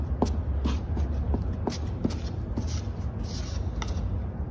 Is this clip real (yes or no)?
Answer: yes